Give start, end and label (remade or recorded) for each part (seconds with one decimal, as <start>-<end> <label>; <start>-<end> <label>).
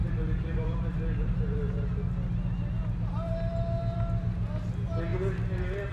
0.0-1.4 remade; 1.4-5.9 recorded